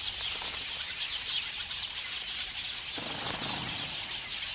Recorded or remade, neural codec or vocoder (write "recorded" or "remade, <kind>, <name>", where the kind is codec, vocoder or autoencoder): recorded